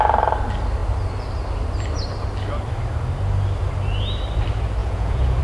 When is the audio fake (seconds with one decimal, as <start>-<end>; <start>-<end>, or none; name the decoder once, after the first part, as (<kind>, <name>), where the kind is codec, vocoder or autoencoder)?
4.8-5.4 (vocoder, Vocos)